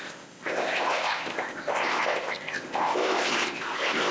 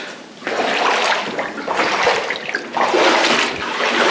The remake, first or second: first